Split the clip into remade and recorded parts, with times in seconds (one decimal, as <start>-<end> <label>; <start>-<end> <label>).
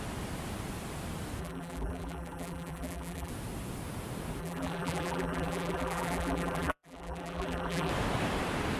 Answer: 0.0-1.4 recorded; 1.4-3.3 remade; 3.3-4.4 recorded; 4.4-7.9 remade; 7.9-8.8 recorded